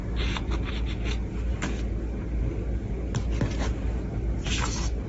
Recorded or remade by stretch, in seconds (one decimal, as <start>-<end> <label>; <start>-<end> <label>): 0.0-5.1 recorded